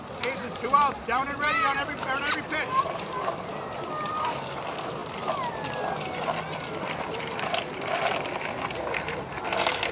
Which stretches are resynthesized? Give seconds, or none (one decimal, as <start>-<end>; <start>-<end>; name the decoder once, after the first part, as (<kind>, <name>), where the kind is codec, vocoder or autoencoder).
0.0-9.9 (vocoder, BigVGAN v2)